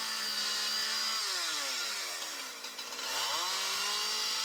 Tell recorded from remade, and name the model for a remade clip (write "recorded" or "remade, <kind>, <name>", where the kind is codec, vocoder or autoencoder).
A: recorded